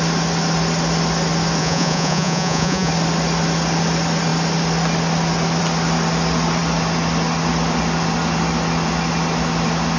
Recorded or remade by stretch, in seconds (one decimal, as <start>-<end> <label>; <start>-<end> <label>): 0.0-1.6 recorded; 1.6-2.9 remade; 2.9-10.0 recorded

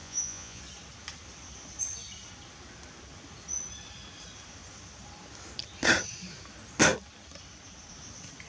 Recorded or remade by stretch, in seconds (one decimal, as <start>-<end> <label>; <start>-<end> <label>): 0.0-0.6 remade; 0.6-8.5 recorded

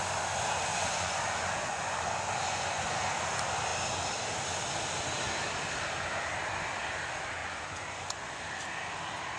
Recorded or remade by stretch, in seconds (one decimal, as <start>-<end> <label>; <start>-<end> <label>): 0.0-0.7 recorded; 0.7-3.0 remade; 3.0-7.4 recorded; 7.4-8.4 remade; 8.4-9.4 recorded

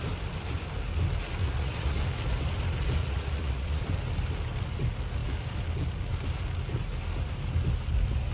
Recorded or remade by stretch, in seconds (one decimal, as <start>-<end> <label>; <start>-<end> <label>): 0.0-1.4 recorded; 1.4-2.0 remade; 2.0-3.0 recorded; 3.0-3.8 remade; 3.8-8.3 recorded

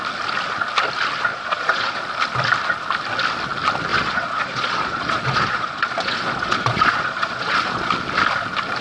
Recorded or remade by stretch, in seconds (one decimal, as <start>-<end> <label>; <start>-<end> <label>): 0.0-1.3 recorded; 1.3-2.0 remade; 2.0-3.9 recorded; 3.9-7.9 remade; 7.9-8.8 recorded

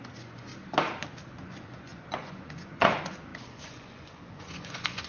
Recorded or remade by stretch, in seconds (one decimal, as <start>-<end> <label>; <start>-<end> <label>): 0.0-0.5 remade; 0.5-1.3 recorded; 1.3-5.1 remade

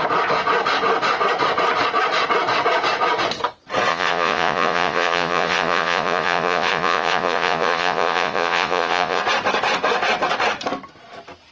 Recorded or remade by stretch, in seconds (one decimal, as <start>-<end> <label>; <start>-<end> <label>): 0.0-3.9 recorded; 3.9-9.2 remade; 9.2-11.5 recorded